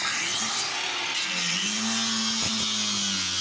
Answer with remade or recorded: recorded